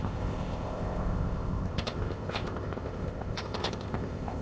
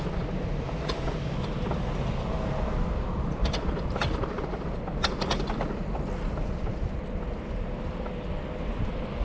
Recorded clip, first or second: second